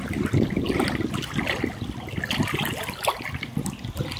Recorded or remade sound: recorded